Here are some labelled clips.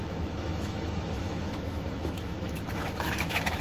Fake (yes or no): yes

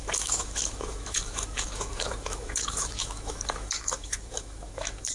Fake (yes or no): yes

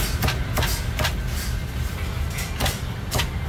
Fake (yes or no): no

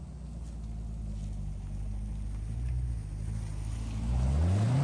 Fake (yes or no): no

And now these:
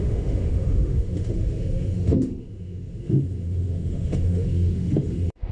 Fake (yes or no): yes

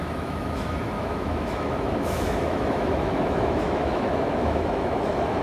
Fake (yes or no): yes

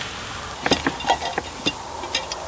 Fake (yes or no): no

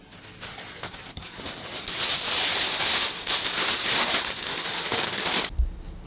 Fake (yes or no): no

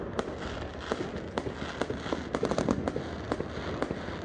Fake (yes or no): no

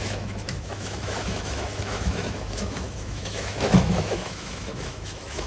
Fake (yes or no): yes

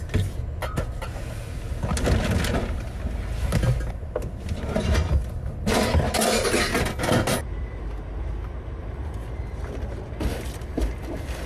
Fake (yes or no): no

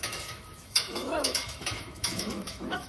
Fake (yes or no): yes